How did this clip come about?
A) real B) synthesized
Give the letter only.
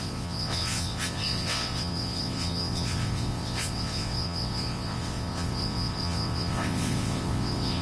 B